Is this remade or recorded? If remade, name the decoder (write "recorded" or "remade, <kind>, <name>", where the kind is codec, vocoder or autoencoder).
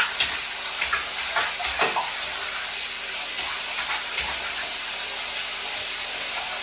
recorded